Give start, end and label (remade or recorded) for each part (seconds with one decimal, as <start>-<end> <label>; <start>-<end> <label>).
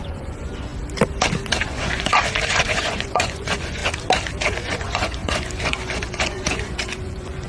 0.0-0.7 remade; 0.7-1.6 recorded; 1.6-2.1 remade; 2.1-2.6 recorded; 2.6-3.8 remade; 3.8-4.5 recorded; 4.5-7.5 remade